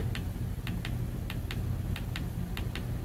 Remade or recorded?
recorded